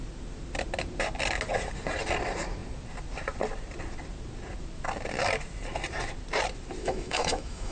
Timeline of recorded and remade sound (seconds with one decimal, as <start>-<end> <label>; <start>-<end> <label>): 0.0-6.8 recorded; 6.8-7.7 remade